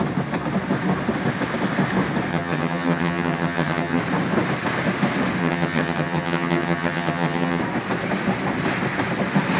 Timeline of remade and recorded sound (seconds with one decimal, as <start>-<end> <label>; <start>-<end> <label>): 0.0-2.3 recorded; 2.3-4.0 remade; 4.0-5.4 recorded; 5.4-7.6 remade; 7.6-9.6 recorded